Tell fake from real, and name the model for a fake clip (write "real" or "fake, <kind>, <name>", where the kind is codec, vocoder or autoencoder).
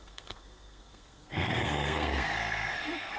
fake, codec, SNAC